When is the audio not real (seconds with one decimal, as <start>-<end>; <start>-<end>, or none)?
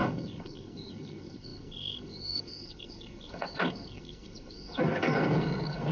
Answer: 0.0-5.9